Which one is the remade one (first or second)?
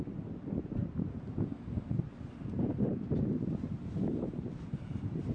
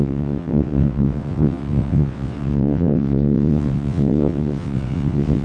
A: second